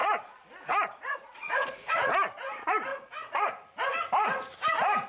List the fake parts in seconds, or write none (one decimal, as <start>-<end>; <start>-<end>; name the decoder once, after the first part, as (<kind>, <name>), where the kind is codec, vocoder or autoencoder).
0.0-2.1 (vocoder, Vocos); 2.9-3.5